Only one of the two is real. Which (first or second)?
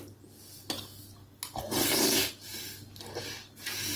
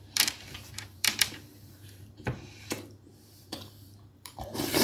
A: first